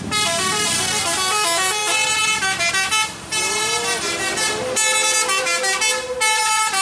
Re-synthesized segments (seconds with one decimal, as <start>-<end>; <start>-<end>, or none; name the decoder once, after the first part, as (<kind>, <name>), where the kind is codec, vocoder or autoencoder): none